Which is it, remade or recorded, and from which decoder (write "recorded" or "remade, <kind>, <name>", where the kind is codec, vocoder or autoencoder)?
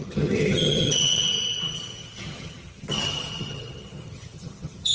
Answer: remade, vocoder, HiFi-GAN